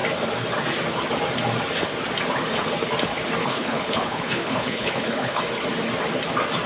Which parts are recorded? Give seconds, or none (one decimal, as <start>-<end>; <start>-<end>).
0.0-3.4; 5.4-6.7